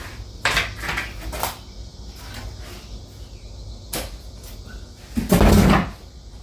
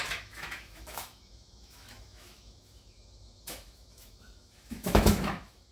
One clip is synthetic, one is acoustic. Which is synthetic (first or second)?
second